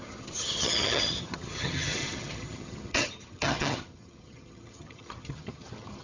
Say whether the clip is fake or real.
fake